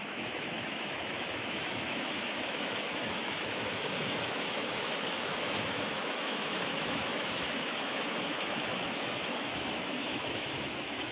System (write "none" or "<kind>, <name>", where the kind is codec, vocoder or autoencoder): autoencoder, DAC-VAE